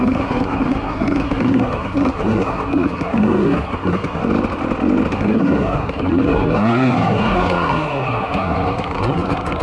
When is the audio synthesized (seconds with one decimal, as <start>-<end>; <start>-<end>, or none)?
0.0-4.2; 5.1-9.6

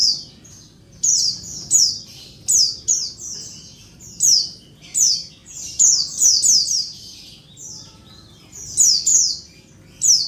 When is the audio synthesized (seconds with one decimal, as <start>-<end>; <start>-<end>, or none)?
none

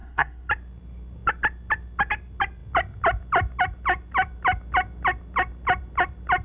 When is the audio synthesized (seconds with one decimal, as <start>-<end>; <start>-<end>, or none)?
0.0-0.5

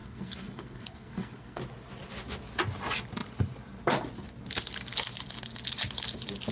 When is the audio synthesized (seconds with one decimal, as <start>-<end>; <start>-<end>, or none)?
0.0-1.6

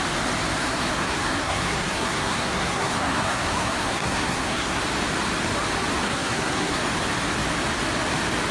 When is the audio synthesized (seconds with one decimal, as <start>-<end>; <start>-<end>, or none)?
0.6-4.8; 6.0-6.8

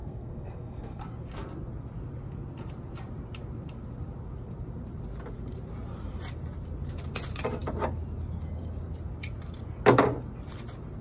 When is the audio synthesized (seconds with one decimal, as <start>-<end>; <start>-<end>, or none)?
0.0-1.0